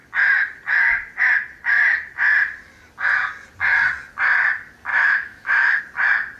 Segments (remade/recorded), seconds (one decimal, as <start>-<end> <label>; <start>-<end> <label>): 0.0-4.9 recorded; 4.9-5.8 remade; 5.8-6.4 recorded